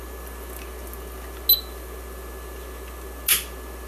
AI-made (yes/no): no